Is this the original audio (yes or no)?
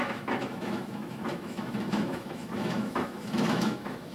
no